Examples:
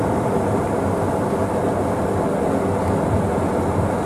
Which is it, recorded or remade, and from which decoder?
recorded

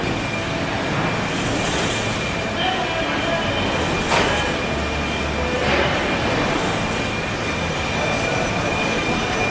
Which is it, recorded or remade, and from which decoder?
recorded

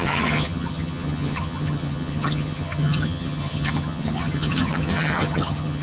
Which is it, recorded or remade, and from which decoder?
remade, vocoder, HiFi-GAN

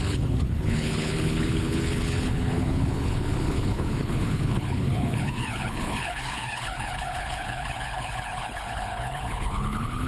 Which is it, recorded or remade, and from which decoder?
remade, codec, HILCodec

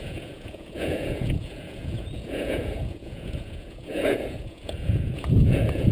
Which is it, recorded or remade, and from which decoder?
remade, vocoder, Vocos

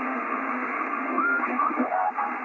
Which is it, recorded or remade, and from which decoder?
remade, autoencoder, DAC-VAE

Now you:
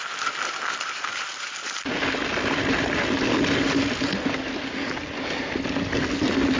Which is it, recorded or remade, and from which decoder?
recorded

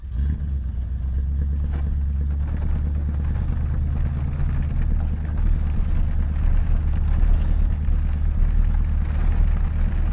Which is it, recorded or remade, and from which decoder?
recorded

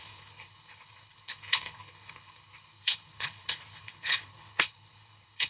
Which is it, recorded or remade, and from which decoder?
remade, codec, HILCodec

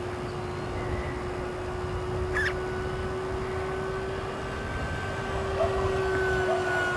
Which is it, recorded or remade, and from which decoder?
recorded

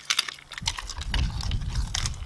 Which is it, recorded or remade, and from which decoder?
recorded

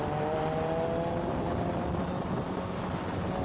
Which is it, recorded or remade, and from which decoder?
recorded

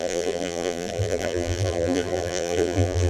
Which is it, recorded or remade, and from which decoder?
remade, vocoder, BigVGAN v2